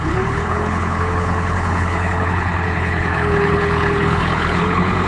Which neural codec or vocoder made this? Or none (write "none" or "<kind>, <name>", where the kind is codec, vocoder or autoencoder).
codec, HILCodec